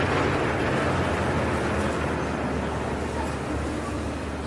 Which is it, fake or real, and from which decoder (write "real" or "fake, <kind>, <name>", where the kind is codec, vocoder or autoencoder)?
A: real